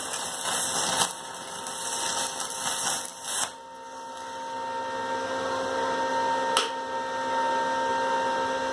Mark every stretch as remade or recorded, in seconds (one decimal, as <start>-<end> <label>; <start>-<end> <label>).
0.0-8.7 recorded